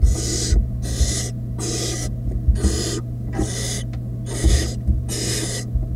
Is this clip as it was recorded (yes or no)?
yes